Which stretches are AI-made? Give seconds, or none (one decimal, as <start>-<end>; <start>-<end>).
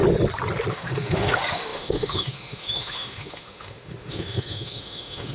0.7-5.3